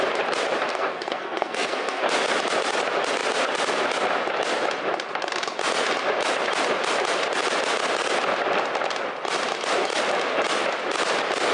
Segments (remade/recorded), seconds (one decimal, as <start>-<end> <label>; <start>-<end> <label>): 0.0-0.7 recorded; 0.7-2.1 remade; 2.1-11.5 recorded